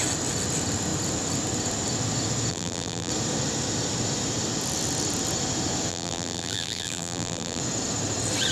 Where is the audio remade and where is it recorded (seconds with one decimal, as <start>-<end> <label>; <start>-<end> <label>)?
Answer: 0.0-2.5 recorded; 2.5-3.1 remade; 3.1-5.9 recorded; 5.9-7.6 remade; 7.6-8.5 recorded